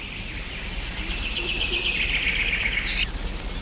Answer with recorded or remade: recorded